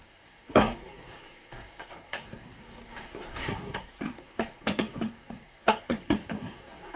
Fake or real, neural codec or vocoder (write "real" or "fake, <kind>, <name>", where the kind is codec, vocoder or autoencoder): fake, codec, SNAC